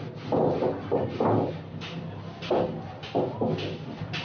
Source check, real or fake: real